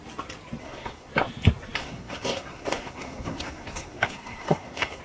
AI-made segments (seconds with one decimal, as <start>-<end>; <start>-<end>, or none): 0.6-1.1; 1.8-5.0